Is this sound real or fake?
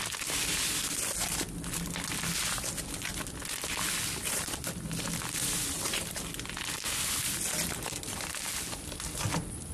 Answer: real